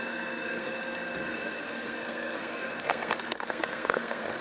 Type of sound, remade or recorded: remade